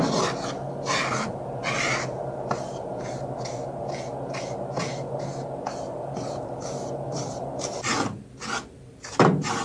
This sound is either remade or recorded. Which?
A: recorded